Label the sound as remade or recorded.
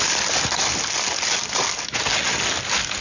recorded